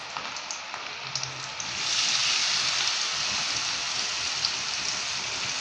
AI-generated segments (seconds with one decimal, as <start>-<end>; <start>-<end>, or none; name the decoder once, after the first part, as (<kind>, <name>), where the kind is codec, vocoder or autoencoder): none